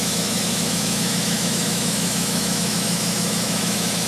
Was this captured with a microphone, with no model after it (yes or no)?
no